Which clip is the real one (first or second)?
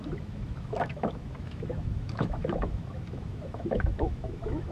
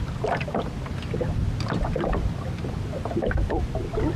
second